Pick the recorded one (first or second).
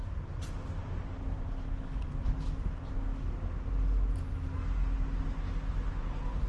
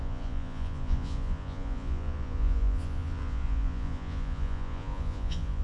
first